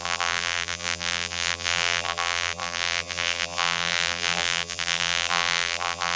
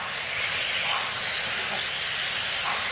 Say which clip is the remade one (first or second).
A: first